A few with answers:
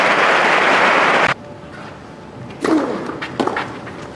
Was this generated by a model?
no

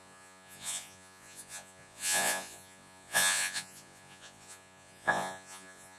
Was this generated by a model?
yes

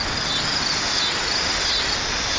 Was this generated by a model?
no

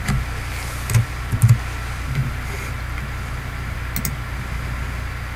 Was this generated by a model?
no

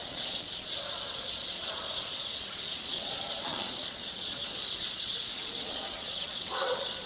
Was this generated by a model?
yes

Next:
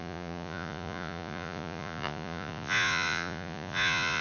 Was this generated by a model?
yes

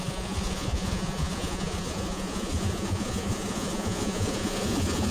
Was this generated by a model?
yes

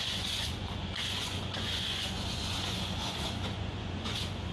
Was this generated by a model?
yes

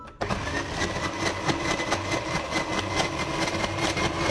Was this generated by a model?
no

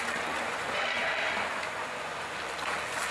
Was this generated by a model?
yes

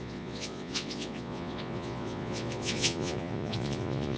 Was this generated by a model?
yes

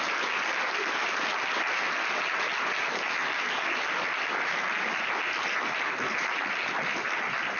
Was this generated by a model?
no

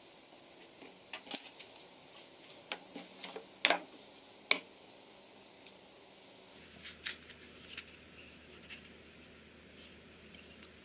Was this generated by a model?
no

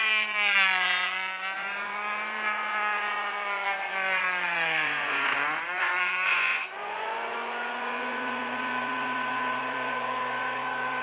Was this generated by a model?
yes